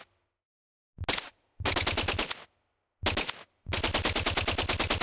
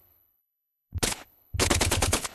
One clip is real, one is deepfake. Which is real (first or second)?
first